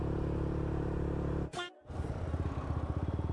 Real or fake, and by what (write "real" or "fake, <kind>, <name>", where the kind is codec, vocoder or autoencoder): real